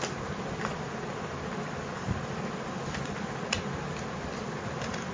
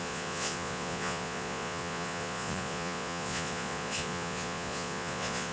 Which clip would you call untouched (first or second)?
first